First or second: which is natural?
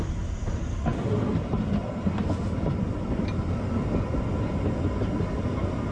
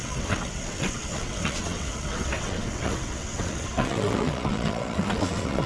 first